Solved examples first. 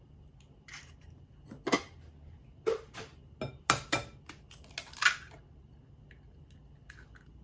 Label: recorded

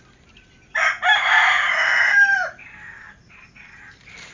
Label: recorded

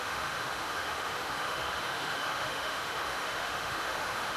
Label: remade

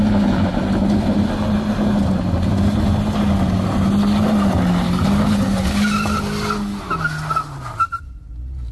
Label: recorded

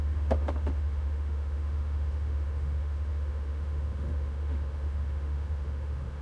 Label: remade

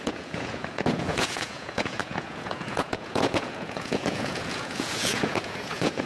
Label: remade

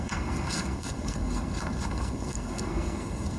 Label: remade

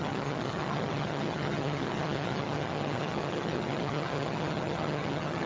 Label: remade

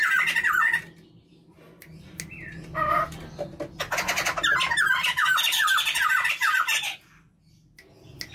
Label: recorded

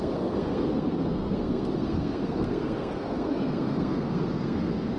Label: remade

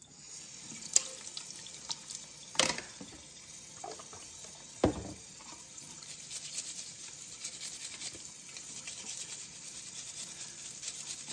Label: recorded